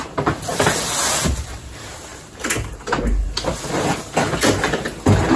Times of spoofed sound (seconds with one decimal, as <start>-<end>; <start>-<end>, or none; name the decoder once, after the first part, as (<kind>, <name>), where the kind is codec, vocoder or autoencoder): 0.0-0.5 (vocoder, BigVGAN v2); 1.1-2.1